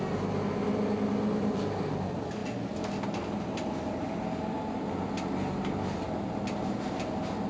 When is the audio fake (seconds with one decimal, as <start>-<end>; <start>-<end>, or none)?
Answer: none